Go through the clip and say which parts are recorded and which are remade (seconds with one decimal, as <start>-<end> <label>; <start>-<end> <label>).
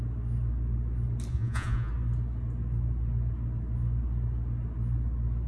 0.0-1.3 recorded; 1.3-1.9 remade; 1.9-5.5 recorded